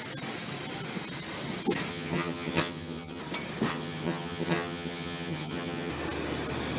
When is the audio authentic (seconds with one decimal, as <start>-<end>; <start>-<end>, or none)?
0.0-1.9; 3.2-3.7; 5.9-6.8